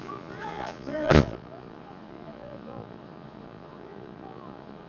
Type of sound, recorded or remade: remade